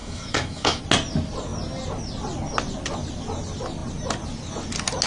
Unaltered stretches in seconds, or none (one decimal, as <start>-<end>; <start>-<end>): 0.8-5.1